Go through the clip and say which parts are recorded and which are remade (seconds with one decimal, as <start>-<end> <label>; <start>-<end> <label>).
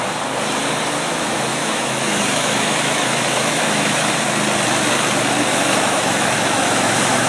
0.0-1.5 recorded; 1.5-4.1 remade; 4.1-5.5 recorded; 5.5-7.3 remade